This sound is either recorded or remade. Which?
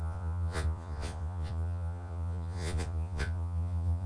remade